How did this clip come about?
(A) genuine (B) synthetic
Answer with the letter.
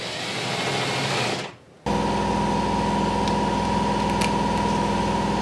A